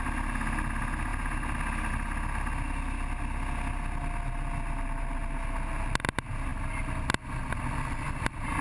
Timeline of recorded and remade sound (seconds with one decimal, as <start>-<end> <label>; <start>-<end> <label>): 0.0-8.6 recorded